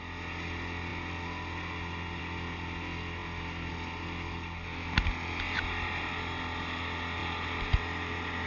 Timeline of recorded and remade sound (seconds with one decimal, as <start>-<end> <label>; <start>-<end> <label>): 0.0-8.5 recorded